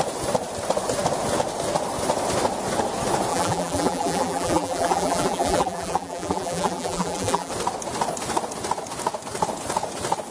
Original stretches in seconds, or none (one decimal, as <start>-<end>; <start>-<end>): 0.0-3.3; 7.5-10.3